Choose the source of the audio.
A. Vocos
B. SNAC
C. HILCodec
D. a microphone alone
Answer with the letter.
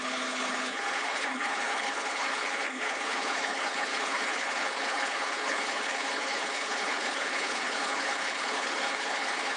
C